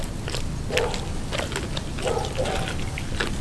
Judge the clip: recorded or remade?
recorded